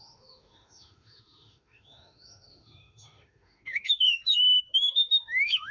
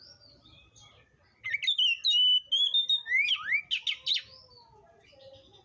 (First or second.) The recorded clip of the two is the second